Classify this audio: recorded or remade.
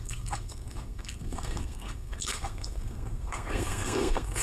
remade